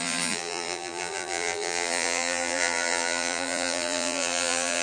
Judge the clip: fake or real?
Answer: fake